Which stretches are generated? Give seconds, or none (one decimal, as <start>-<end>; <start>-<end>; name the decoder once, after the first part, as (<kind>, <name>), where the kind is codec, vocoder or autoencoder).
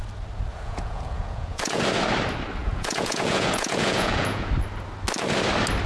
0.5-1.8 (vocoder, Vocos); 2.6-4.5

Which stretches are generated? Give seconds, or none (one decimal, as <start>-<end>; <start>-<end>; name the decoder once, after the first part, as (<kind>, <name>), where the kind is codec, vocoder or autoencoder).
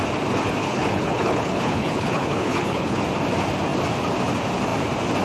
0.6-3.0 (codec, HILCodec)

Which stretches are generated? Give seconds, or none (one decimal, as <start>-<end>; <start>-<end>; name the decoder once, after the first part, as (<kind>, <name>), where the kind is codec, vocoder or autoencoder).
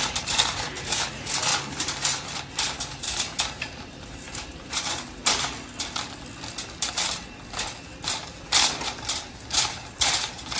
0.0-1.5 (vocoder, BigVGAN v2); 2.5-5.2; 9.3-10.6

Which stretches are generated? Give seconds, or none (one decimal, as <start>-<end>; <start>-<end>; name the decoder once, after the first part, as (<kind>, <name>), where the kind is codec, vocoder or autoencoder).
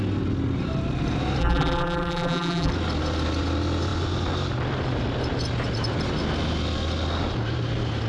1.4-2.7 (vocoder, BigVGAN v2)